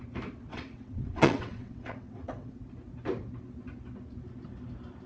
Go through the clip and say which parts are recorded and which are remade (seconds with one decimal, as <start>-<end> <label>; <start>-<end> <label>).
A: 0.0-0.5 recorded; 0.5-2.6 remade; 2.6-5.1 recorded